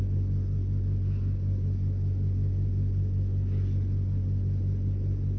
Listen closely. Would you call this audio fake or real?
real